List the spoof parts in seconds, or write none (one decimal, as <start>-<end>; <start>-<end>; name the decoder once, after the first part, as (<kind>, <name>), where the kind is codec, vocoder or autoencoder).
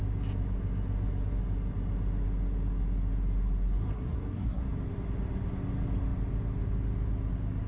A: 3.9-4.6 (codec, SNAC)